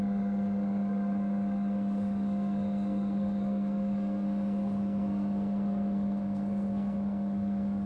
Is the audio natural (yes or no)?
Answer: no